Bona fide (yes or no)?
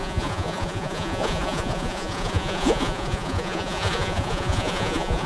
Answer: no